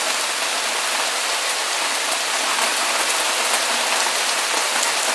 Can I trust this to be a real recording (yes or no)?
yes